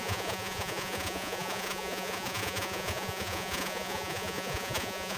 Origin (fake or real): fake